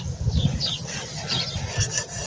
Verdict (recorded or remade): recorded